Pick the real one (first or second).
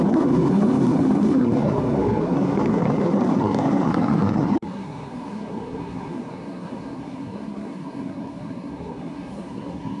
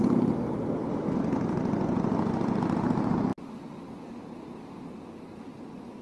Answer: second